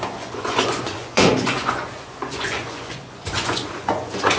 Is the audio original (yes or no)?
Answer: no